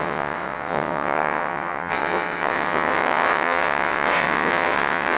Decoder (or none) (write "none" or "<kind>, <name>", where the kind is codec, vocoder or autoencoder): vocoder, WaveNeXt